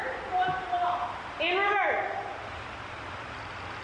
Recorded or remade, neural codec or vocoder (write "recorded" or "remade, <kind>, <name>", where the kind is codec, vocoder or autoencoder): recorded